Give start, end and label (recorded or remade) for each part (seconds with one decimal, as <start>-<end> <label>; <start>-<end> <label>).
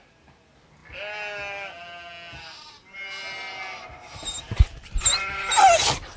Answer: 0.0-6.2 recorded